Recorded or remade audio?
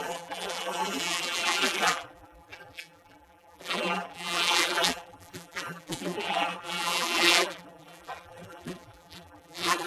remade